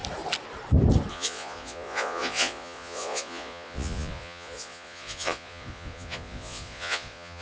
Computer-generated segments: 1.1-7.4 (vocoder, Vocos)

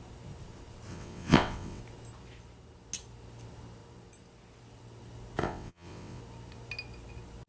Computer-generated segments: 0.9-1.8 (vocoder, WaveNeXt); 5.4-6.2

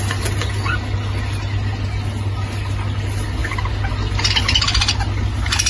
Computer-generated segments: none